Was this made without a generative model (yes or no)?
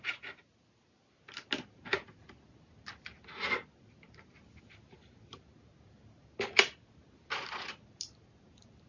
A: yes